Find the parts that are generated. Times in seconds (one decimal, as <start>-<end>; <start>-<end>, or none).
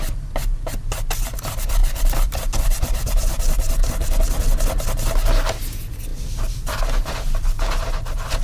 1.8-4.4; 6.1-6.8